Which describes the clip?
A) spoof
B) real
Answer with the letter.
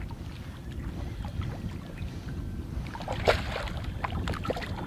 B